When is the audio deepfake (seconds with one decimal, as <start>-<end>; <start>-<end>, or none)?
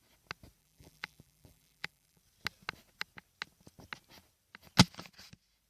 0.6-2.2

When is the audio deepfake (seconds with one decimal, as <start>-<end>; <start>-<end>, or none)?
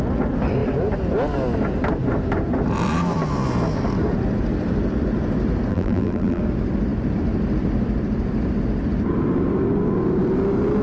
5.7-6.4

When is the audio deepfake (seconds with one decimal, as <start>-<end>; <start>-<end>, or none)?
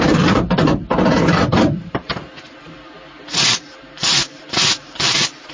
0.0-2.1; 3.5-5.5